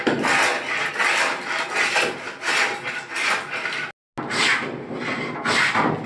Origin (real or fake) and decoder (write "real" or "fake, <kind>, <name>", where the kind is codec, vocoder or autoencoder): real